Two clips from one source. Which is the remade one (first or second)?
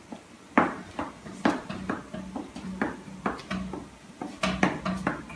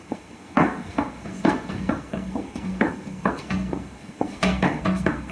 second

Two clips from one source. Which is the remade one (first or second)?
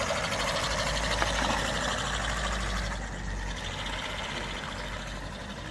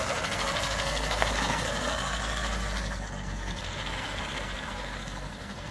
second